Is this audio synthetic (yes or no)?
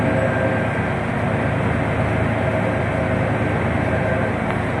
no